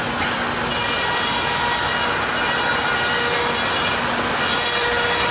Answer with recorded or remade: recorded